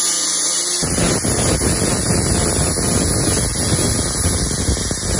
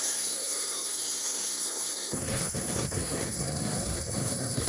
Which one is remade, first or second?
second